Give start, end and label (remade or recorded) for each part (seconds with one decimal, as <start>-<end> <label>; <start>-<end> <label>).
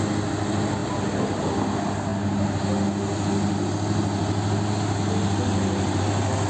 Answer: 0.0-6.5 recorded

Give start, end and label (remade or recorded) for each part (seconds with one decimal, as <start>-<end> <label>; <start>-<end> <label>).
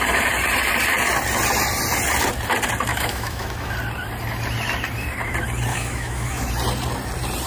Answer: 0.0-2.9 recorded; 2.9-3.7 remade; 3.7-5.7 recorded; 5.7-6.5 remade; 6.5-7.5 recorded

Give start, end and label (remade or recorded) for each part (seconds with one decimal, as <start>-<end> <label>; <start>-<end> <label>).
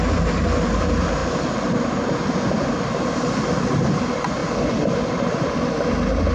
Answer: 0.0-6.3 recorded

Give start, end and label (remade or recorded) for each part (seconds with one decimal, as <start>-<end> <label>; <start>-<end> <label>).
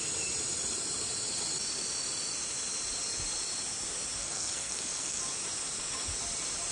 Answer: 0.0-4.2 recorded; 4.2-5.2 remade; 5.2-6.7 recorded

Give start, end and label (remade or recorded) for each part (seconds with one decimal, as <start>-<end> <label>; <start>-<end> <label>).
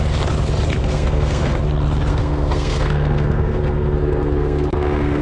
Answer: 0.0-0.8 recorded; 0.8-1.6 remade; 1.6-2.1 recorded; 2.1-5.2 remade